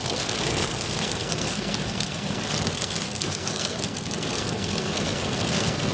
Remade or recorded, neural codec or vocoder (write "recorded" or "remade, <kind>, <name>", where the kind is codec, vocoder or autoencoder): remade, codec, SNAC